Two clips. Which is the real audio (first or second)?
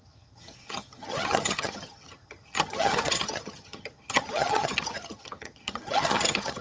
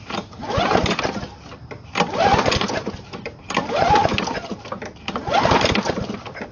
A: second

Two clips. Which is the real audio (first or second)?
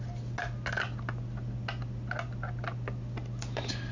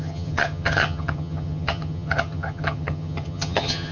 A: first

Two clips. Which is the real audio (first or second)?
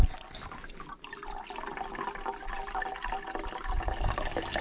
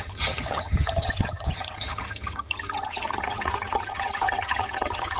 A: first